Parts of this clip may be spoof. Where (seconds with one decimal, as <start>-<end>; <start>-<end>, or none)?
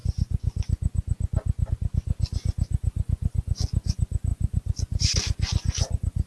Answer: none